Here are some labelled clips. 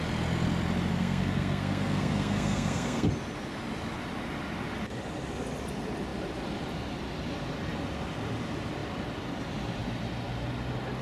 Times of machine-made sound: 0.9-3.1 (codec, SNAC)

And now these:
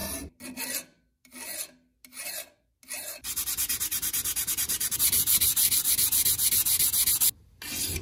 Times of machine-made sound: none

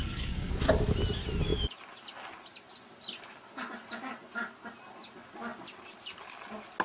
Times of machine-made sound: 0.0-0.5 (codec, SNAC)

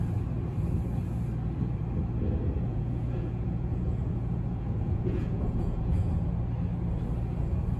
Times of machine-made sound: 2.7-6.1 (vocoder, Vocos)

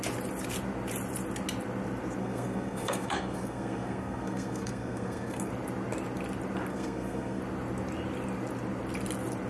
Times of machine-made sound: 2.2-5.5 (codec, SNAC); 6.7-7.4